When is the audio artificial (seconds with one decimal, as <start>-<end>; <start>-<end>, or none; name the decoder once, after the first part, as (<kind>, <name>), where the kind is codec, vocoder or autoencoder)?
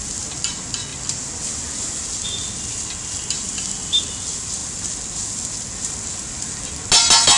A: none